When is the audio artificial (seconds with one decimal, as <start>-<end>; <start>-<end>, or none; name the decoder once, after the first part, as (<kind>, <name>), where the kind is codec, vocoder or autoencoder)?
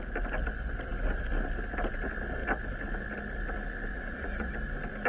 3.9-4.5 (vocoder, Vocos)